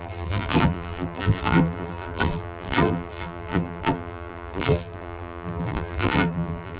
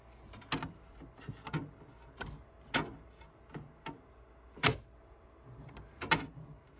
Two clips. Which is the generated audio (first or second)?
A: first